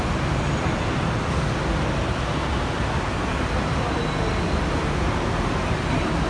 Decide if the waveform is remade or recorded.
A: recorded